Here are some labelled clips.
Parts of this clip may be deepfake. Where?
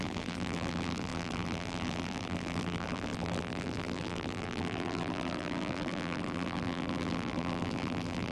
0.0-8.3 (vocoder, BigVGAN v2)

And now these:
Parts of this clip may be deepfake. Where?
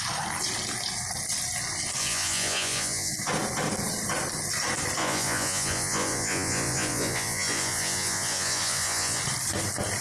2.0-3.1 (vocoder, Vocos); 5.0-9.2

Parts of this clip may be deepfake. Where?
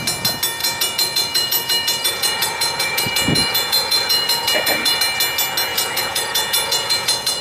0.6-5.0 (vocoder, Vocos); 5.7-7.4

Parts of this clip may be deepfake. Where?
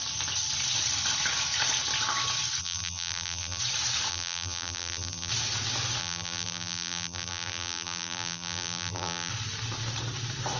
2.6-3.6 (vocoder, BigVGAN v2); 4.1-5.3; 6.0-9.3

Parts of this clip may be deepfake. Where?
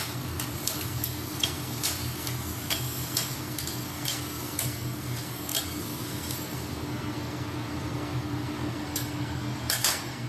0.0-10.3 (codec, SNAC)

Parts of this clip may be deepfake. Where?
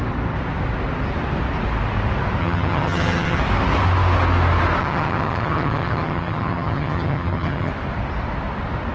2.4-3.4 (vocoder, HiFi-GAN); 4.8-7.7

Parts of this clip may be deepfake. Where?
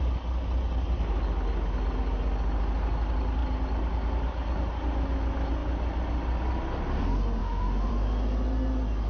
7.4-7.9 (autoencoder, DAC-VAE)